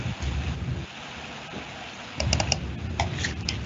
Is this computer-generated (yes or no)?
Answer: no